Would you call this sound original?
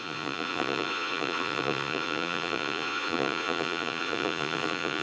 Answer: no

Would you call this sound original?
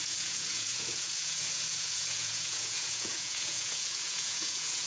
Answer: no